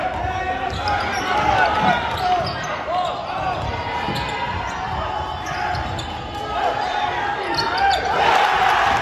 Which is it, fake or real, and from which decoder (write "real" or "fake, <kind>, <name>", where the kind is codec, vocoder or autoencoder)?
real